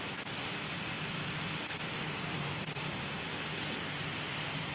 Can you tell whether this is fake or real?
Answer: real